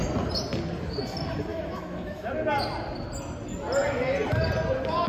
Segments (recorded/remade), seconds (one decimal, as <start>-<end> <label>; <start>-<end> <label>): 0.0-1.5 recorded; 1.5-2.3 remade; 2.3-5.1 recorded